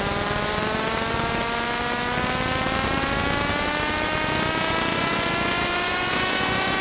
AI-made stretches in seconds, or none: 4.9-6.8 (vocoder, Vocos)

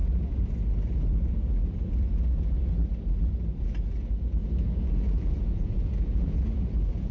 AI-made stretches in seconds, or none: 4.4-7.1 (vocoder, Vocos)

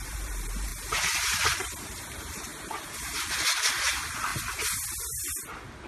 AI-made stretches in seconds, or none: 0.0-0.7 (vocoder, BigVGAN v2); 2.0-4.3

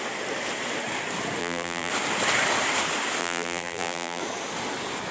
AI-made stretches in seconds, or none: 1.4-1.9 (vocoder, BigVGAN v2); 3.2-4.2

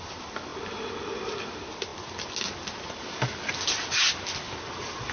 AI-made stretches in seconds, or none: none

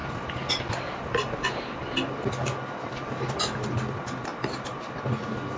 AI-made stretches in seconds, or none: none